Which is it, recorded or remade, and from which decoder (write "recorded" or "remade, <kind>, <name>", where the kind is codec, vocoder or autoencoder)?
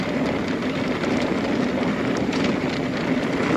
remade, vocoder, BigVGAN v2